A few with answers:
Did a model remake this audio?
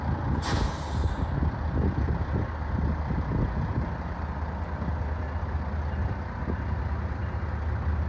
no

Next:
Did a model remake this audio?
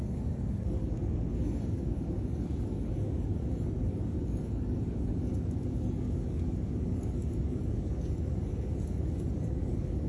yes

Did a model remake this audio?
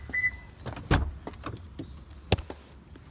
no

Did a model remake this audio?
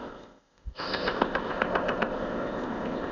yes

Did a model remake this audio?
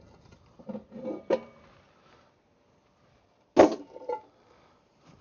no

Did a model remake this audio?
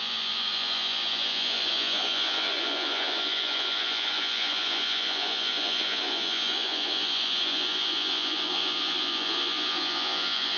yes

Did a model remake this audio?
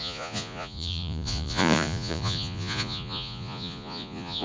yes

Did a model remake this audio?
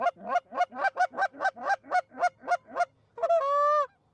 no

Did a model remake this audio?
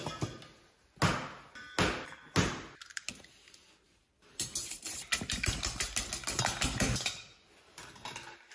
no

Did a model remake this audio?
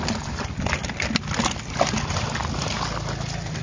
no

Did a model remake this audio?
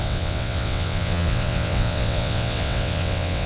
yes